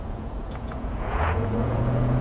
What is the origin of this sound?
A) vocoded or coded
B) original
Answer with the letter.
A